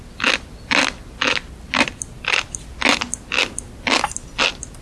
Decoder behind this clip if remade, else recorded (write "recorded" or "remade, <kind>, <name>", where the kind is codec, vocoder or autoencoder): recorded